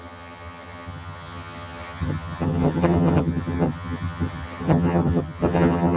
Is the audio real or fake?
fake